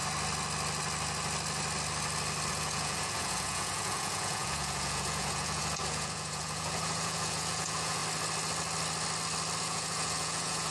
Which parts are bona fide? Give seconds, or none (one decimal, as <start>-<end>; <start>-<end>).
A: 0.0-2.5; 8.0-9.6